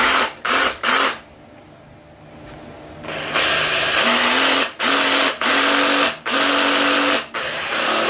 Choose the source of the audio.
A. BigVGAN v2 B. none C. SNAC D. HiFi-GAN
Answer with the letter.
B